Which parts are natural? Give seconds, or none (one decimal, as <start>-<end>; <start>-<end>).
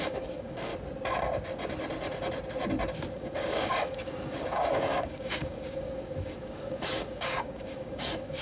0.7-3.1